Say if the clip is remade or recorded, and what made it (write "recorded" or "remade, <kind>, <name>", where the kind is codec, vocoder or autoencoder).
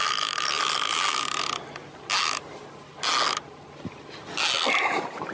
recorded